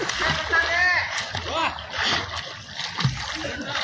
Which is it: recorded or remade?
recorded